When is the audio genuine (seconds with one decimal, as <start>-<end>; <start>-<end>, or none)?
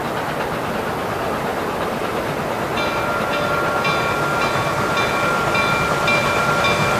0.0-1.5; 3.7-7.0